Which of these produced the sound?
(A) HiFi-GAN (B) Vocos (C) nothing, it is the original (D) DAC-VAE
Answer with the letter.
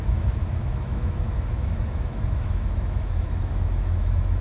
D